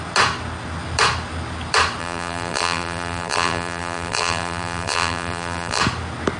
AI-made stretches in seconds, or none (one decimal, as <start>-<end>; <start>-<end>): 2.0-5.8